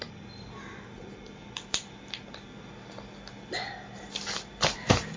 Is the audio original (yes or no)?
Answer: yes